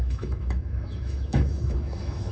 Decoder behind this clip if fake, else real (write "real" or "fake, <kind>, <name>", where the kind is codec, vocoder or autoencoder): fake, autoencoder, DAC-VAE